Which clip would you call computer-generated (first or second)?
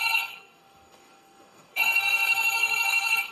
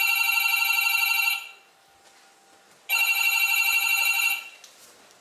first